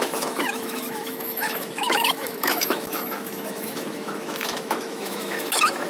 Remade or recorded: remade